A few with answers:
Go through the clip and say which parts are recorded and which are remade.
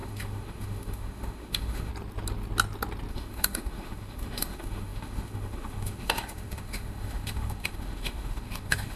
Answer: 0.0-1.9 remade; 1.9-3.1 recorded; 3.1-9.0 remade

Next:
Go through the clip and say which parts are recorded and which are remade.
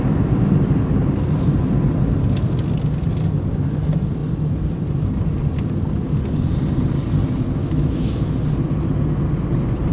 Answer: 0.0-7.6 recorded; 7.6-8.3 remade; 8.3-9.9 recorded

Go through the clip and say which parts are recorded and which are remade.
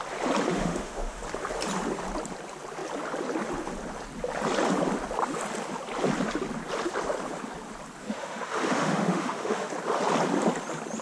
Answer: 0.0-0.5 recorded; 0.5-1.2 remade; 1.2-8.0 recorded; 8.0-9.7 remade; 9.7-11.0 recorded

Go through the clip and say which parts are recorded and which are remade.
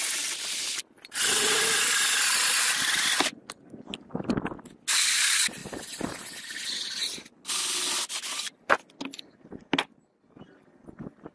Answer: 0.0-11.3 recorded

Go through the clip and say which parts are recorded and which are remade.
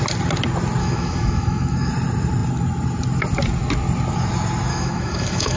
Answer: 0.0-0.8 recorded; 0.8-1.9 remade; 1.9-4.7 recorded; 4.7-5.6 remade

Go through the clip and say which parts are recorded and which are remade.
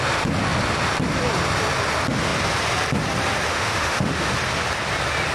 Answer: 0.0-3.5 recorded; 3.5-4.3 remade; 4.3-5.3 recorded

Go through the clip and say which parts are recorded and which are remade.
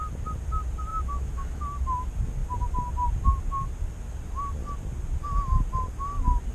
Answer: 0.0-0.9 recorded; 0.9-1.6 remade; 1.6-6.5 recorded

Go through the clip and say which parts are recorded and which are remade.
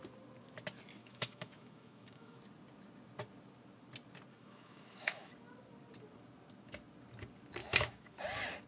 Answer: 0.0-1.0 recorded; 1.0-2.4 remade; 2.4-4.3 recorded; 4.3-5.3 remade; 5.3-7.6 recorded; 7.6-8.2 remade; 8.2-8.7 recorded